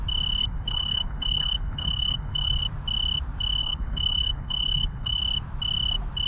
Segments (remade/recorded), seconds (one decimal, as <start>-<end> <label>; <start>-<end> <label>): 0.0-0.4 recorded; 0.4-2.6 remade; 2.6-3.6 recorded; 3.6-5.2 remade; 5.2-6.3 recorded

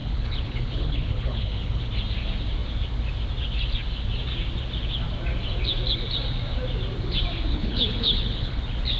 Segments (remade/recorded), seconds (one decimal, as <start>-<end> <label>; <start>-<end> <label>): 0.0-1.9 remade; 1.9-7.5 recorded; 7.5-8.6 remade; 8.6-9.0 recorded

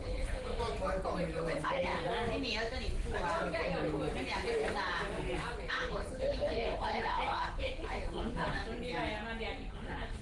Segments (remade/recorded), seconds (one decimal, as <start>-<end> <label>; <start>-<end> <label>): 0.0-0.5 remade; 0.5-1.4 recorded; 1.4-1.9 remade; 1.9-5.7 recorded; 5.7-8.6 remade; 8.6-9.7 recorded; 9.7-10.2 remade

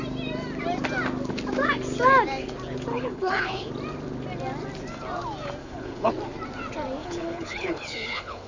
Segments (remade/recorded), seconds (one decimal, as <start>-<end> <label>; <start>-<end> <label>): 0.0-2.9 recorded; 2.9-3.7 remade; 3.7-5.6 recorded; 5.6-6.1 remade; 6.1-7.0 recorded; 7.0-8.5 remade

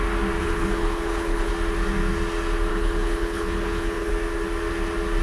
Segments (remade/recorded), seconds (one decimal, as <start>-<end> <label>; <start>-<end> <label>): 0.0-0.4 recorded; 0.4-1.5 remade; 1.5-2.7 recorded; 2.7-4.1 remade; 4.1-5.2 recorded

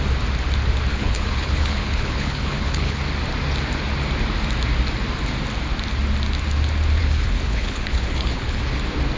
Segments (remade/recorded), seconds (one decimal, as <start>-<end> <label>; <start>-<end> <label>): 0.0-0.9 recorded; 0.9-3.0 remade; 3.0-7.0 recorded; 7.0-8.6 remade; 8.6-9.2 recorded

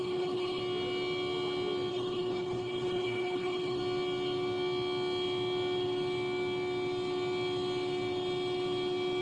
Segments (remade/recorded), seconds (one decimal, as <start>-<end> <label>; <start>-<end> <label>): 0.0-0.6 remade; 0.6-1.9 recorded; 1.9-3.8 remade; 3.8-9.2 recorded